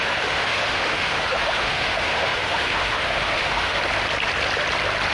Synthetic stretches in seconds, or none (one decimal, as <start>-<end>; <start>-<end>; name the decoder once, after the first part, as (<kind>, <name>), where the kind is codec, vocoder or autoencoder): 0.0-3.8 (autoencoder, DAC-VAE)